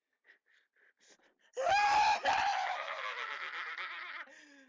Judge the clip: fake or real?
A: real